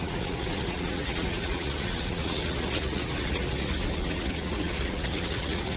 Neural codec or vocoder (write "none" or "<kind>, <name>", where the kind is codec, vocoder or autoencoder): vocoder, Vocos